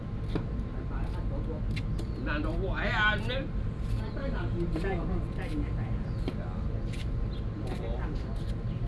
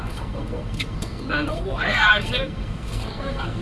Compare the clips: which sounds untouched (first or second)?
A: first